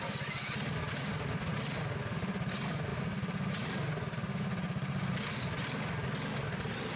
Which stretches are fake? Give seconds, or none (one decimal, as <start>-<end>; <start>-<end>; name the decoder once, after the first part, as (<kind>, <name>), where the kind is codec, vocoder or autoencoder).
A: none